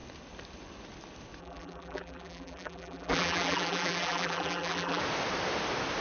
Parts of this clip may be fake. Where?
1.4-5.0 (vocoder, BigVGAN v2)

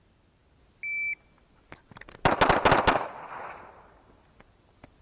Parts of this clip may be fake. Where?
none